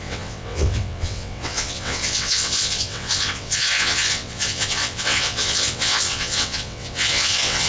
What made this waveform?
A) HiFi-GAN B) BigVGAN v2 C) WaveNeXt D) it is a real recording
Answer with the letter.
C